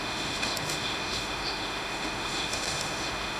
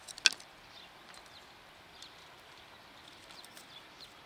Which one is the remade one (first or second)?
first